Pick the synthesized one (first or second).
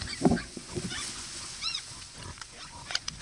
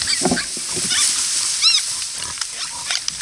first